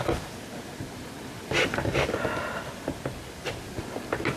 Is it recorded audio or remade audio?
recorded